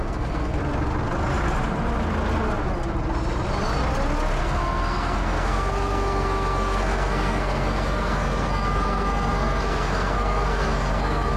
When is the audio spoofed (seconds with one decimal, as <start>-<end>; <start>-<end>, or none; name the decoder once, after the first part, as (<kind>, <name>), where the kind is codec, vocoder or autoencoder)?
0.0-0.6 (codec, SNAC); 4.4-11.4